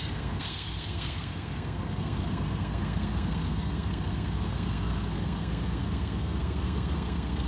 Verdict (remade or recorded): remade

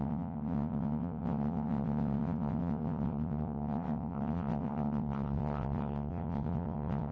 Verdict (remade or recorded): remade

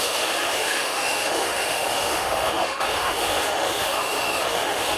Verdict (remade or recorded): remade